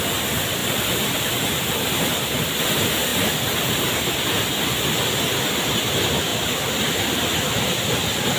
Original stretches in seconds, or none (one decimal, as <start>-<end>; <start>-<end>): 0.0-0.6; 2.7-6.3